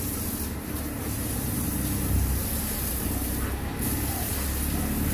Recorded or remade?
recorded